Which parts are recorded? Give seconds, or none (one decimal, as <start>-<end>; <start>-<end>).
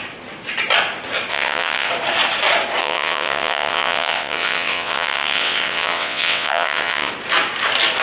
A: 0.0-1.3; 1.9-2.8; 7.1-8.0